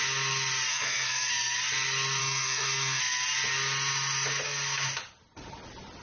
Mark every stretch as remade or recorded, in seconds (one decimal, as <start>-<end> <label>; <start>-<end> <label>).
0.0-0.7 recorded; 0.7-1.3 remade; 1.3-2.2 recorded; 2.2-3.0 remade; 3.0-6.0 recorded